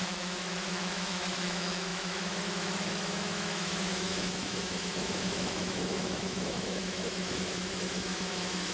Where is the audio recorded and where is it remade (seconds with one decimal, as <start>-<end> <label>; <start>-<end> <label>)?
0.0-8.7 remade